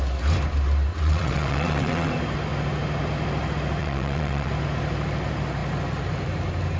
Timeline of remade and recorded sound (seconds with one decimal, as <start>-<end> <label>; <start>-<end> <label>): 0.0-0.9 recorded; 0.9-2.1 remade; 2.1-3.8 recorded; 3.8-4.5 remade; 4.5-6.8 recorded